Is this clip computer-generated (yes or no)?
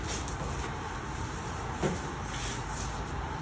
no